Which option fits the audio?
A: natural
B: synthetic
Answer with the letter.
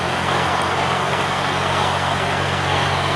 B